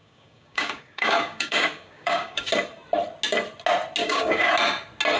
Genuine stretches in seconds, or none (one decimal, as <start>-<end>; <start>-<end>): 2.5-4.0; 4.5-5.2